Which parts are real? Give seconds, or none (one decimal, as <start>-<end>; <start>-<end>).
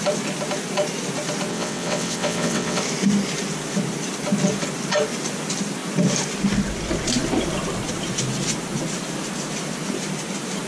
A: 0.0-1.5; 2.8-10.7